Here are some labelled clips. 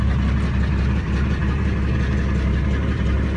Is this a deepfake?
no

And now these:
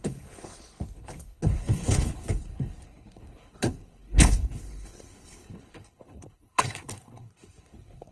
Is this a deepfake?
yes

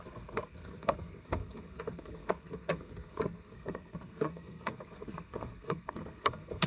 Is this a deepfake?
yes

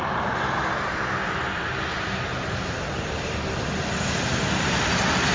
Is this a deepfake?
no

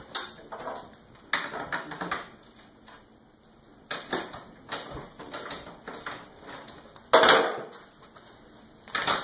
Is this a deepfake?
no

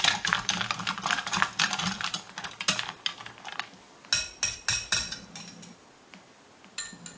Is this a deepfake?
no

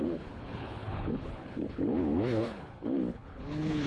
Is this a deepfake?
yes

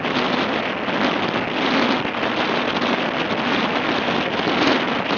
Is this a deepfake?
no